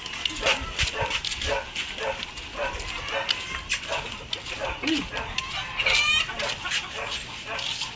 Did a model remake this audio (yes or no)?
no